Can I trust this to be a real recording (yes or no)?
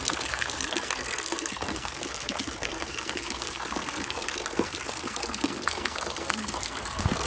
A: no